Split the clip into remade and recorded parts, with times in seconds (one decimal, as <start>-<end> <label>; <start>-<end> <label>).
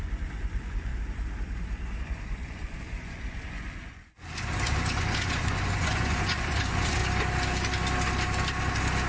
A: 0.0-0.9 remade; 0.9-2.0 recorded; 2.0-7.0 remade; 7.0-9.1 recorded